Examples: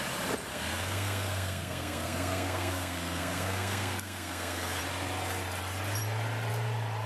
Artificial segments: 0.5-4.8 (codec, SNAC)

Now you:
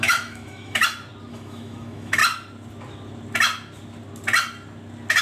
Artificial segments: 0.0-0.8 (autoencoder, DAC-VAE); 1.3-2.2

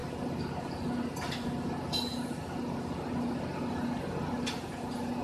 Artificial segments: none